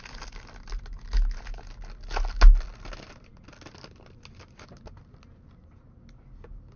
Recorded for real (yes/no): yes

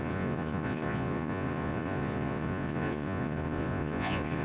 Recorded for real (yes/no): no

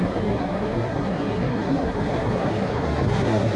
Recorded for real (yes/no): no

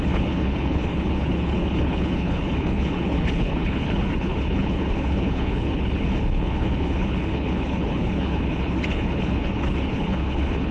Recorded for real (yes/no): no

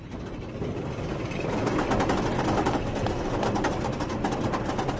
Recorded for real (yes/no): yes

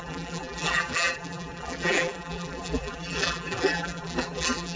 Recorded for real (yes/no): no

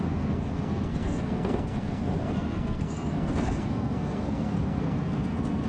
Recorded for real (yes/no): no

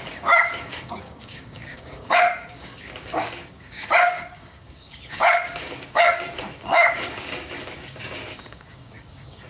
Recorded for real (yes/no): no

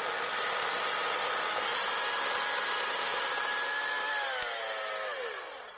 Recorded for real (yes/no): yes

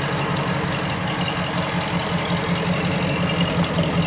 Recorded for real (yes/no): yes